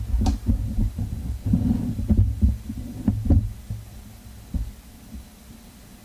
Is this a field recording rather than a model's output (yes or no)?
yes